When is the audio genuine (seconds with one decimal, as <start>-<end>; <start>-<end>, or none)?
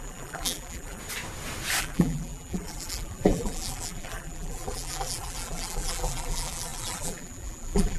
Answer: 1.0-1.8